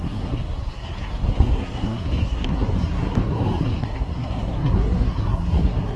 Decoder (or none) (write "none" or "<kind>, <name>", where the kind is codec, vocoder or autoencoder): codec, SNAC